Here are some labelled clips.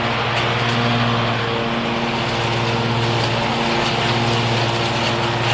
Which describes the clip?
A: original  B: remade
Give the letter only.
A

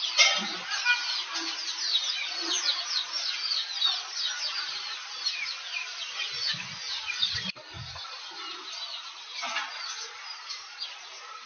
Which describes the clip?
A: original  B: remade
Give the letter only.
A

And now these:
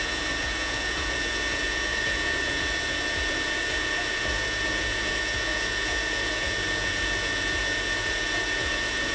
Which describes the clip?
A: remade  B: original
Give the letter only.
A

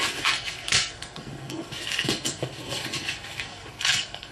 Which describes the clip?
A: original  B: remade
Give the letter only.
B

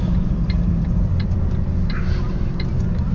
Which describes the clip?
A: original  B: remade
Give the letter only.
A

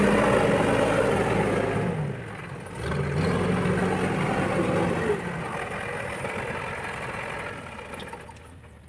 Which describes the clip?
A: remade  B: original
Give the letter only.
B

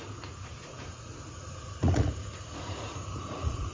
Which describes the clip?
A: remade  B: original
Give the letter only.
A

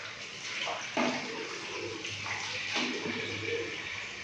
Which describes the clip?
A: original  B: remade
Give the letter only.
A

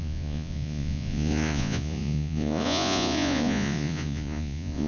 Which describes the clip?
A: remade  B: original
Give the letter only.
A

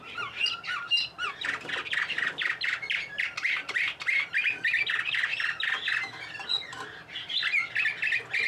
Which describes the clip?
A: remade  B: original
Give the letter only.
B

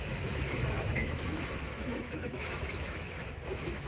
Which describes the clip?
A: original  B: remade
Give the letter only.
B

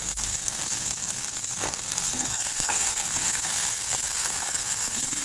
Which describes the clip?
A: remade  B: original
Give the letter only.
A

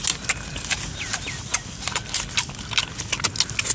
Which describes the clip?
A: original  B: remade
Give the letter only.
A